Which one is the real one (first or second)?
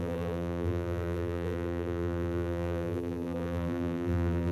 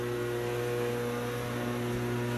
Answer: second